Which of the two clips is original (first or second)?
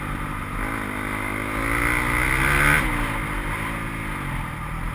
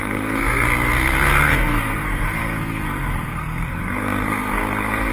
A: first